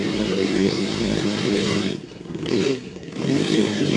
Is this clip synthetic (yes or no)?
yes